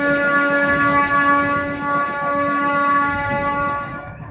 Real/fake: fake